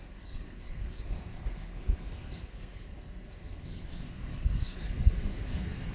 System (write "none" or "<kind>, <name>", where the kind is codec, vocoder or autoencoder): codec, SNAC